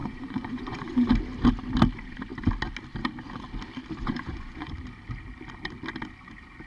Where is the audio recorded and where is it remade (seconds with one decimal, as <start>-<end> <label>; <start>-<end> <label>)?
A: 0.0-1.1 remade; 1.1-4.0 recorded; 4.0-4.7 remade; 4.7-6.7 recorded